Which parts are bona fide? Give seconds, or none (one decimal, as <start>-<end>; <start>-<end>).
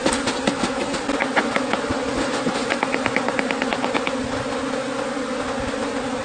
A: 0.0-6.2